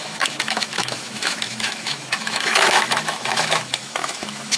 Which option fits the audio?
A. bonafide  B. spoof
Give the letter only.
B